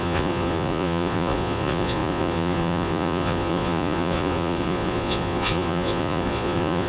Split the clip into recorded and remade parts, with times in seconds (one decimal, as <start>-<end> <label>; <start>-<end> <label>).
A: 0.0-6.9 remade